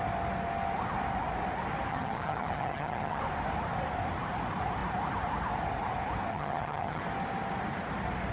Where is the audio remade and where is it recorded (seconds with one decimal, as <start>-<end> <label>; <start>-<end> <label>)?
0.0-1.9 recorded; 1.9-3.2 remade; 3.2-6.3 recorded; 6.3-7.0 remade; 7.0-8.3 recorded

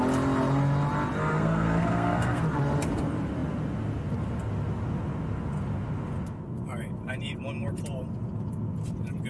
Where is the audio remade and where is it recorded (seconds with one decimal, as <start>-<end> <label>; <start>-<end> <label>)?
0.0-1.2 recorded; 1.2-2.4 remade; 2.4-9.3 recorded

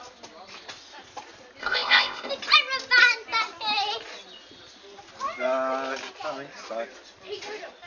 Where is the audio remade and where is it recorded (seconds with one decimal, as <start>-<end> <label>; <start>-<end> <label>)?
0.0-1.6 recorded; 1.6-2.3 remade; 2.3-7.9 recorded